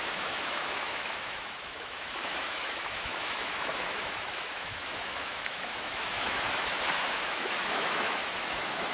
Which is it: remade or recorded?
remade